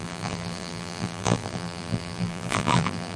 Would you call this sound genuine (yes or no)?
no